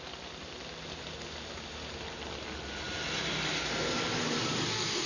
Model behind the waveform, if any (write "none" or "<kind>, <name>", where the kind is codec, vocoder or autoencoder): none